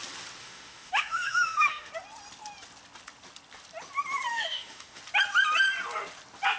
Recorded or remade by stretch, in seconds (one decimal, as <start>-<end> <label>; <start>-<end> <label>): 0.0-0.4 recorded; 0.4-1.9 remade; 1.9-4.3 recorded; 4.3-5.0 remade; 5.0-6.6 recorded